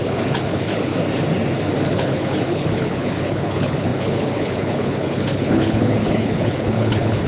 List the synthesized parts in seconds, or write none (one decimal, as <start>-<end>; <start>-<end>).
0.0-0.9; 1.9-7.3